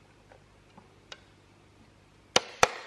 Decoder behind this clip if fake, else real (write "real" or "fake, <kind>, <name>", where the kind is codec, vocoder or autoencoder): real